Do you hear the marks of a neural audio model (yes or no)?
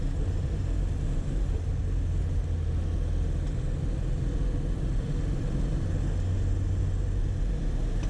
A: no